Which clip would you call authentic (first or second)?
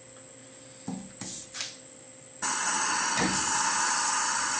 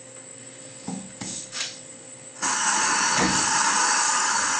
first